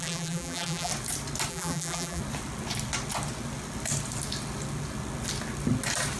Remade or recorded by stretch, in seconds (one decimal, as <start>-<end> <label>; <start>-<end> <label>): 0.0-0.9 remade; 0.9-1.5 recorded; 1.5-2.2 remade; 2.2-6.2 recorded